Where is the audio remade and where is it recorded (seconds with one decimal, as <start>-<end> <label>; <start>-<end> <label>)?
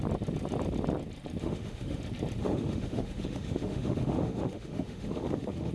0.0-1.4 recorded; 1.4-2.0 remade; 2.0-2.4 recorded; 2.4-5.7 remade